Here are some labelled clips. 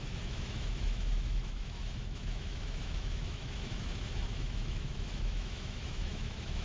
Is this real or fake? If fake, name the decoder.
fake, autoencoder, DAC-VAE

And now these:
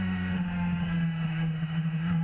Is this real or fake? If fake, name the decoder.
fake, autoencoder, DAC-VAE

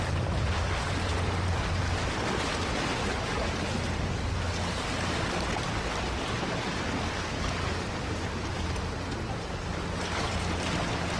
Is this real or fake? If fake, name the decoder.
real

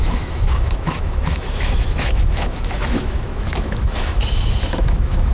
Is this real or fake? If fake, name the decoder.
fake, autoencoder, DAC-VAE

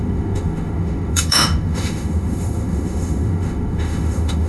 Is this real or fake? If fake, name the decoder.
fake, autoencoder, DAC-VAE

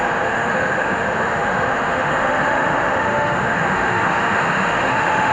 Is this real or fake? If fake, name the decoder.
fake, autoencoder, DAC-VAE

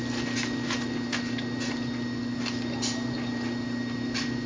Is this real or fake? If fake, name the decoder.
real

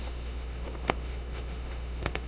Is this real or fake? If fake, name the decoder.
fake, autoencoder, DAC-VAE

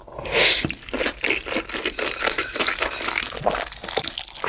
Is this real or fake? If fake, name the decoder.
real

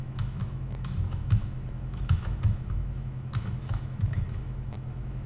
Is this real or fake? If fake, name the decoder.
fake, autoencoder, DAC-VAE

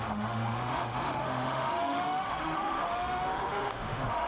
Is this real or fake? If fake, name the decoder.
fake, autoencoder, DAC-VAE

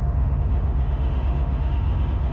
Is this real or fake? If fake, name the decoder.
fake, autoencoder, DAC-VAE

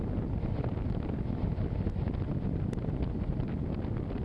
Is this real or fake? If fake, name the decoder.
real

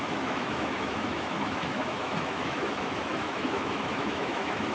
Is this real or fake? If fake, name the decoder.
fake, autoencoder, DAC-VAE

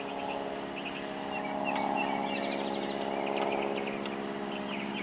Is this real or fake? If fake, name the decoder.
real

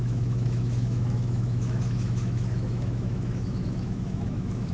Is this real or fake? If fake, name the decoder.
fake, autoencoder, DAC-VAE